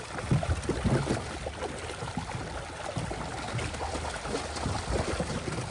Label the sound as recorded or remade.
recorded